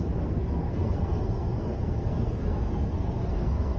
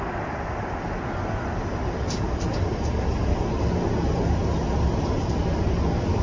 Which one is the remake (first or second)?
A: first